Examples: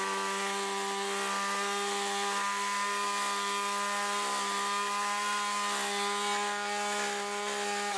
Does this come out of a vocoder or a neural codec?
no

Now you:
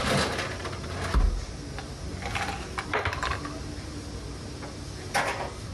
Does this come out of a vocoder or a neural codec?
no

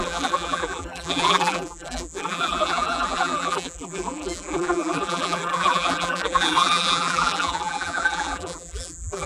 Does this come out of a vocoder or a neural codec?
yes